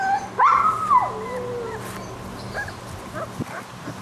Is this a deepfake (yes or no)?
no